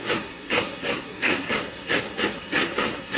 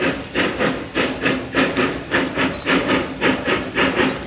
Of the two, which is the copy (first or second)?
first